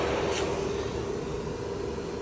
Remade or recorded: recorded